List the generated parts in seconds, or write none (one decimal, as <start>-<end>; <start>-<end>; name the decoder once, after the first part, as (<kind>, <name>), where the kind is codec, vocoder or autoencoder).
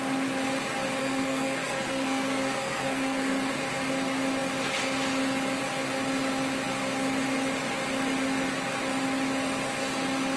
1.0-3.5 (codec, SNAC)